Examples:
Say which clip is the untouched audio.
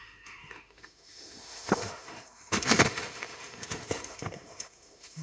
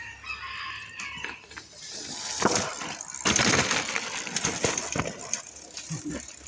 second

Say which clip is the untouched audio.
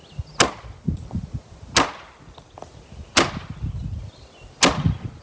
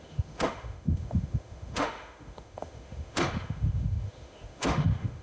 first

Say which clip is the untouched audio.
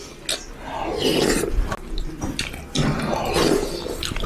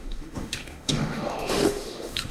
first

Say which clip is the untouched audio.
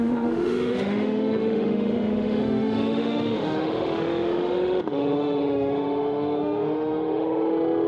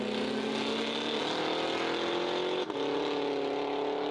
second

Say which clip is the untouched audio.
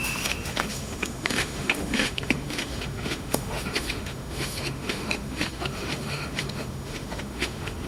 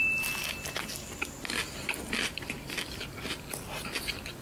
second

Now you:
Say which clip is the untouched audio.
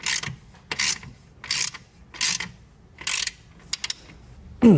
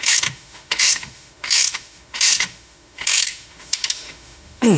first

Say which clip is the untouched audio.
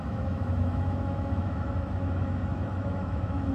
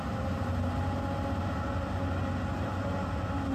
second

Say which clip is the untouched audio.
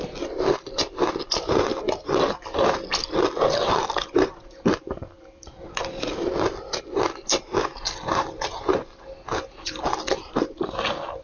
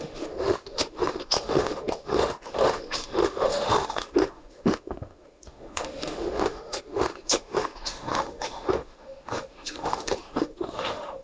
first